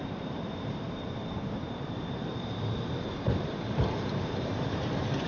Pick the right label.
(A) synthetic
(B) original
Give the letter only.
A